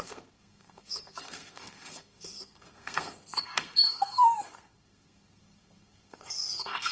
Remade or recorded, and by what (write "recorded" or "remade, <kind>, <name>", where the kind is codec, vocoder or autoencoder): remade, codec, SNAC